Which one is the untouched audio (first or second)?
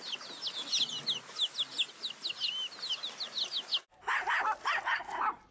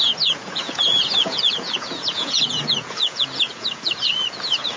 first